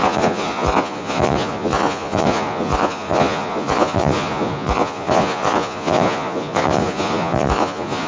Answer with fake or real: fake